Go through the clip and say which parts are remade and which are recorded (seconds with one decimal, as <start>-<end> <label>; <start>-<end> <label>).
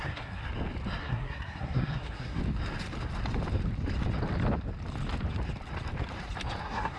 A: 0.0-0.4 remade; 0.4-1.0 recorded; 1.0-2.4 remade; 2.4-6.6 recorded; 6.6-7.0 remade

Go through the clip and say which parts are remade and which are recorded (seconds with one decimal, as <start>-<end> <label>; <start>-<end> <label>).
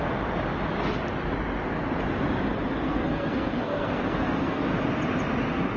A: 0.0-2.9 recorded; 2.9-4.6 remade; 4.6-5.8 recorded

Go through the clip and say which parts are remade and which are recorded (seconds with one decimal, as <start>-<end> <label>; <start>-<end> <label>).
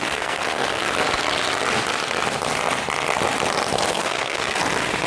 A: 0.0-0.8 remade; 0.8-3.9 recorded; 3.9-4.6 remade; 4.6-5.1 recorded